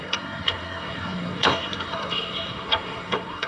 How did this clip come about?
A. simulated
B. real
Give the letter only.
A